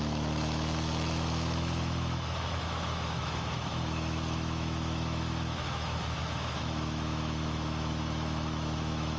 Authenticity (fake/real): fake